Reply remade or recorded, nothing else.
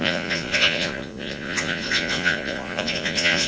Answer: remade